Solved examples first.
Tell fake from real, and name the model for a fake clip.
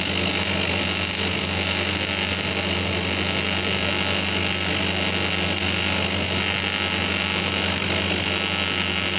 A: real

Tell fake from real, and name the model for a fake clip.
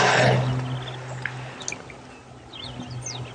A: real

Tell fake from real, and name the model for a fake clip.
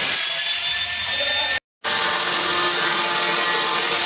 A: real